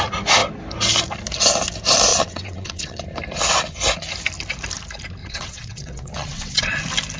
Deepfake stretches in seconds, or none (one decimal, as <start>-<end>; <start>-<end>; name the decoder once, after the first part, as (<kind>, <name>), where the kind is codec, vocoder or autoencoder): 2.1-3.0 (vocoder, WaveNeXt); 5.2-6.8